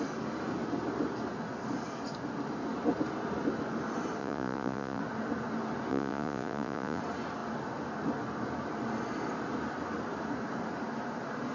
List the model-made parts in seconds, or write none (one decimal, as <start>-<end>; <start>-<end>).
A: 4.2-5.0; 5.9-7.0